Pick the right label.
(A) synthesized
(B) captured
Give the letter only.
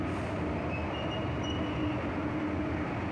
B